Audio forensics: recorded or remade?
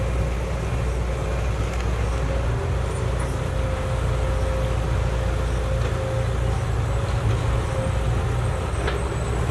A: recorded